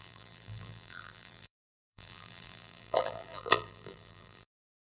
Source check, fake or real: fake